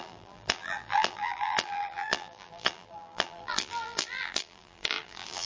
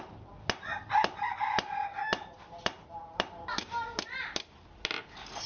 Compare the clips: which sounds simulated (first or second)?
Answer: first